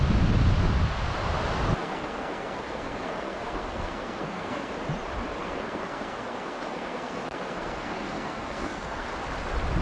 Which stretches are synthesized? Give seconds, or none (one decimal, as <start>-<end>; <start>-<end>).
1.8-4.7; 5.4-9.1